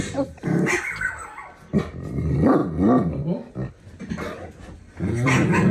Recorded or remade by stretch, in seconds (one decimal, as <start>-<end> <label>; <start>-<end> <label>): 0.0-2.6 remade; 2.6-3.7 recorded; 3.7-5.7 remade